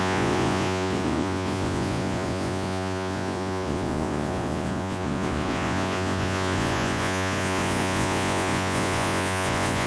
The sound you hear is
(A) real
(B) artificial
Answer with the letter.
B